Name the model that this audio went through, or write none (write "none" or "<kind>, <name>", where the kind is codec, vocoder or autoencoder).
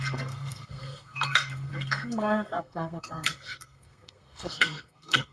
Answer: codec, SNAC